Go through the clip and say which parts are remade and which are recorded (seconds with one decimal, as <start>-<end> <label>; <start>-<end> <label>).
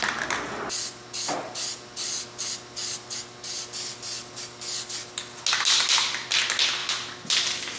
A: 0.0-7.8 recorded